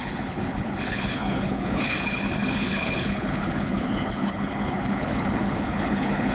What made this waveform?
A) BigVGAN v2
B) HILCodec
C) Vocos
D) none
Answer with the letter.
B